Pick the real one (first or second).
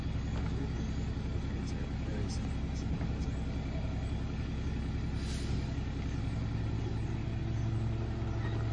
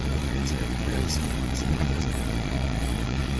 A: first